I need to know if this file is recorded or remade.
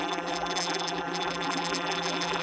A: remade